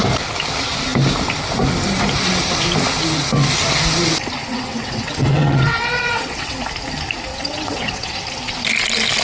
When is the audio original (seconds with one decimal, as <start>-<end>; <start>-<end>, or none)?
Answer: 0.0-4.5; 6.6-7.3; 8.2-9.2